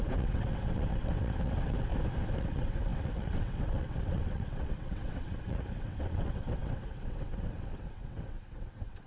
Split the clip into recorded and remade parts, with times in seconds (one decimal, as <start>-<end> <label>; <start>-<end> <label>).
0.0-1.9 remade; 1.9-2.4 recorded; 2.4-9.1 remade